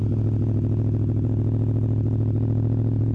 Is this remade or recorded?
recorded